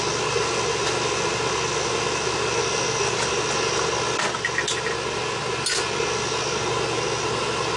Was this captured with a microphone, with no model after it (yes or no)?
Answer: yes